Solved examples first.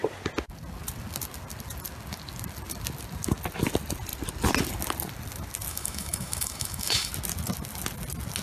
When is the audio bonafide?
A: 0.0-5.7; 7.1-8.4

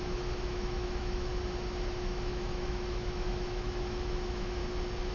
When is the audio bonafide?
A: 1.3-1.9; 4.6-5.1

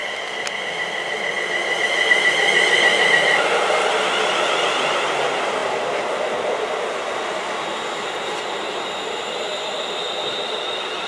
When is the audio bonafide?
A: 0.0-11.1

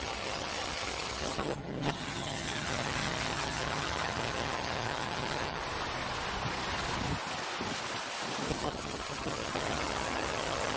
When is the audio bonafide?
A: 5.6-8.5